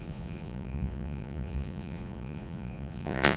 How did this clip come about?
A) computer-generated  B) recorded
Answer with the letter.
A